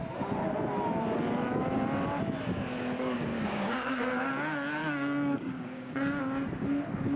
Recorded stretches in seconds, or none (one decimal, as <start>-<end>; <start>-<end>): 0.0-3.3; 4.3-4.8; 6.2-7.2